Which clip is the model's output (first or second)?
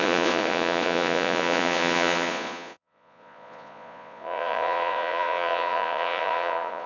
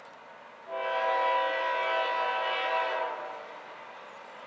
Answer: first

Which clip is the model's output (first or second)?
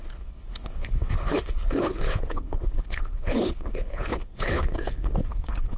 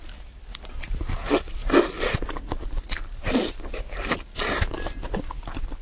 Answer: first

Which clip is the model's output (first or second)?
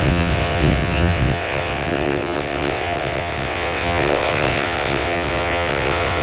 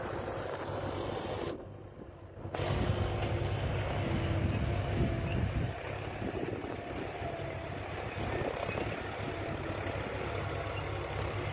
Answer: first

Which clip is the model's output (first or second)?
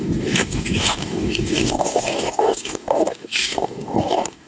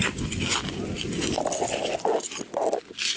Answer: first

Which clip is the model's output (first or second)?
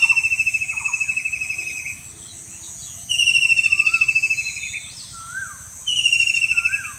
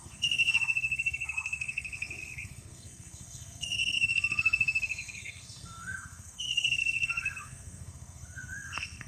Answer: second